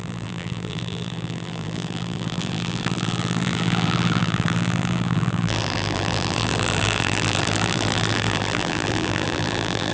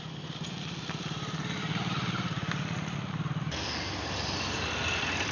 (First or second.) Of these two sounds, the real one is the second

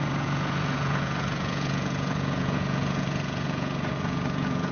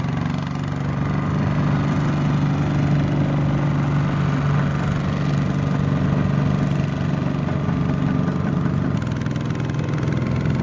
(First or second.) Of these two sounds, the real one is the second